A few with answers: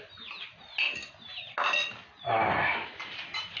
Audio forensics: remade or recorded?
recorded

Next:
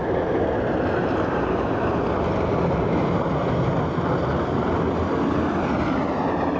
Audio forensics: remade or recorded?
recorded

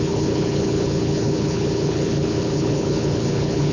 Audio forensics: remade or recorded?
remade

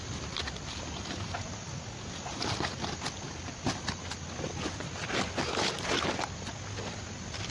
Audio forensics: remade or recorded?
recorded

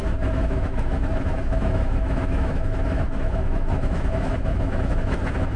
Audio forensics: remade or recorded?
remade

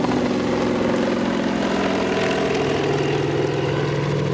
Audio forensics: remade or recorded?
recorded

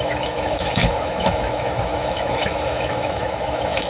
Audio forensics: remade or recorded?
remade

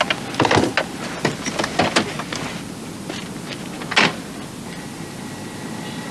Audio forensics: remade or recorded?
recorded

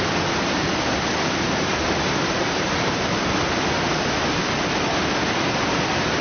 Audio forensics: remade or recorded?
recorded